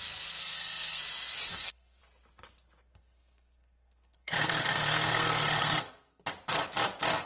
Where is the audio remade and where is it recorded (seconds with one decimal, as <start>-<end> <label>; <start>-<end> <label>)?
0.0-0.4 recorded; 0.4-1.0 remade; 1.0-1.5 recorded; 1.5-2.0 remade; 2.0-2.9 recorded; 2.9-6.2 remade; 6.2-7.3 recorded